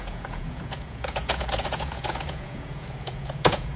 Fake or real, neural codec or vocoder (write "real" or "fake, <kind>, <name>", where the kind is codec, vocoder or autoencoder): fake, vocoder, Vocos